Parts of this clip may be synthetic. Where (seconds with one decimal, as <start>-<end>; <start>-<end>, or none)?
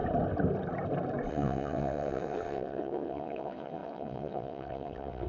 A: 1.3-5.3